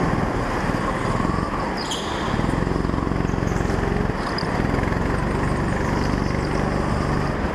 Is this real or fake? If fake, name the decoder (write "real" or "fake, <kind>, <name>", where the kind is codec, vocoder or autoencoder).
real